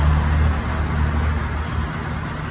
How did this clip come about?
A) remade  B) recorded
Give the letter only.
B